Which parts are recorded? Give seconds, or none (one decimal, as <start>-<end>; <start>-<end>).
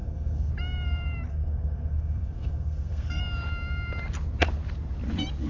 0.5-1.3; 3.2-5.5